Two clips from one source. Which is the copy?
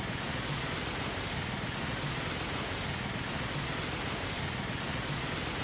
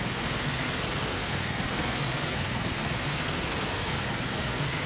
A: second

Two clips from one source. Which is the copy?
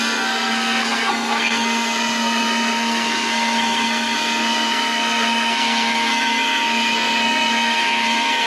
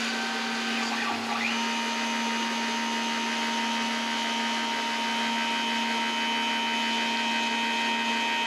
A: first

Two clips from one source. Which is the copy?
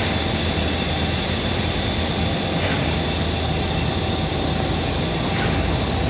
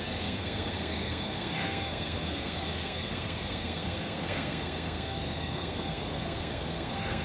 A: second